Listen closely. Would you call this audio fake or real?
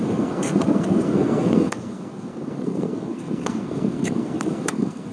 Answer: fake